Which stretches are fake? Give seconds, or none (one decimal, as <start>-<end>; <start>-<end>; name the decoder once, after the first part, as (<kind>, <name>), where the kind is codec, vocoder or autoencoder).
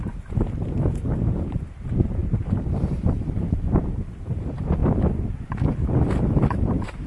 0.0-4.8 (vocoder, BigVGAN v2); 6.2-7.1